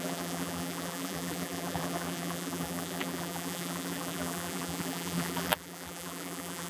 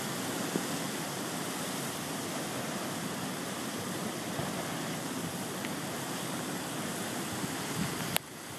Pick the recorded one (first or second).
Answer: second